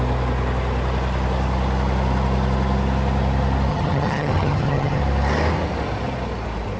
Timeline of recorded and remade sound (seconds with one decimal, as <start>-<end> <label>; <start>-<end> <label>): 0.0-3.7 recorded; 3.7-5.0 remade; 5.0-6.8 recorded